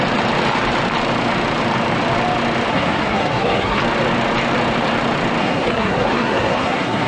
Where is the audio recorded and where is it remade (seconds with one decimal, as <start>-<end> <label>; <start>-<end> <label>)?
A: 0.0-2.7 recorded; 2.7-3.8 remade; 3.8-5.4 recorded; 5.4-7.1 remade